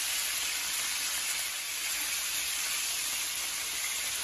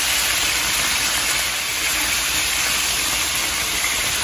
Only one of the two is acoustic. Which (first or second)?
first